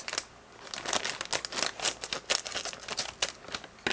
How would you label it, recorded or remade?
recorded